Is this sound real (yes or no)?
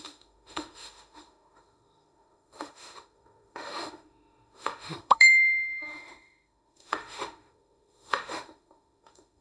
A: no